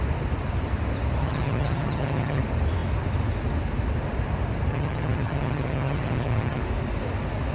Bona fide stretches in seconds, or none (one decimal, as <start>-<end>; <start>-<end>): 0.0-1.2; 2.4-4.7; 6.6-7.5